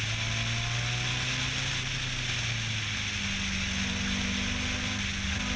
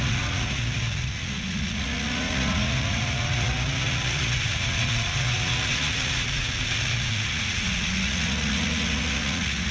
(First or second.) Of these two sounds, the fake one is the second